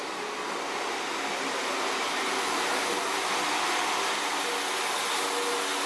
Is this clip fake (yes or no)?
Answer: no